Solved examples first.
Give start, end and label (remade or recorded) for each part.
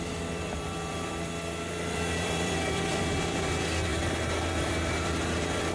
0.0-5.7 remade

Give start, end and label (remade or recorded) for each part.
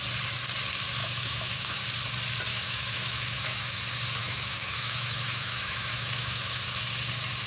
0.0-1.0 recorded; 1.0-1.8 remade; 1.8-2.5 recorded; 2.5-3.8 remade; 3.8-4.2 recorded; 4.2-6.6 remade; 6.6-7.5 recorded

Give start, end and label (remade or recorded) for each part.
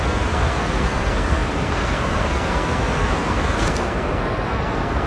0.0-5.1 remade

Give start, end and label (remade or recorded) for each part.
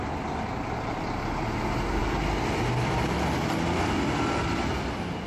0.0-5.3 recorded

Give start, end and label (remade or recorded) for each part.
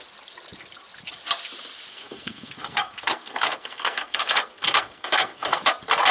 0.0-1.9 recorded; 1.9-5.6 remade; 5.6-6.1 recorded